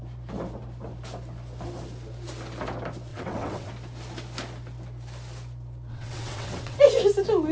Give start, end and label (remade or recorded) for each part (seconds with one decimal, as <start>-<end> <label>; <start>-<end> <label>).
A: 0.0-3.1 recorded; 3.1-3.7 remade; 3.7-5.9 recorded; 5.9-6.8 remade; 6.8-7.5 recorded